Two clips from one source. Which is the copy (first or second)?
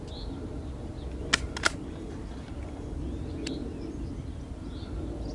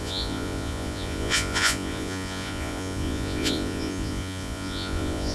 second